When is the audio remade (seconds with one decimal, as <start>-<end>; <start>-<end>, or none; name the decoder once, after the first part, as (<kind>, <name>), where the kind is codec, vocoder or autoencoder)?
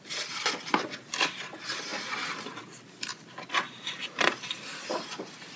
3.1-5.6 (vocoder, BigVGAN v2)